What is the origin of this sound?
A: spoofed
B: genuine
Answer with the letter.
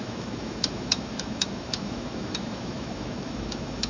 A